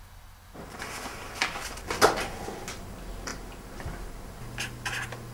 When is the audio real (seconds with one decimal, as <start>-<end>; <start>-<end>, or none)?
0.0-5.3